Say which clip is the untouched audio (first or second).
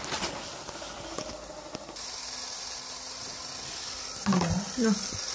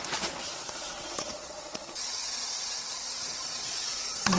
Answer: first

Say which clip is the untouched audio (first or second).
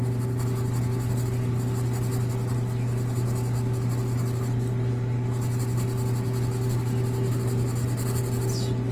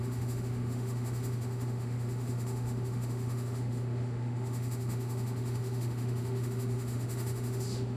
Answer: first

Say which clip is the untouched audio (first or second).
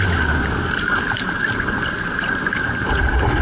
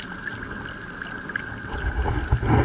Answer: second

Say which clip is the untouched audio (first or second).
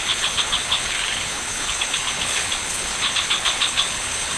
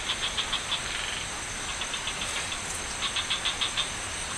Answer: second